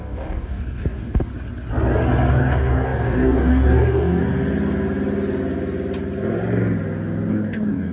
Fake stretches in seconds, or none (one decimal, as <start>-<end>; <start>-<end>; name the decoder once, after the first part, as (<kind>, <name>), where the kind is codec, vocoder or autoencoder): 0.0-1.3 (codec, DAC); 2.3-4.2; 7.3-7.9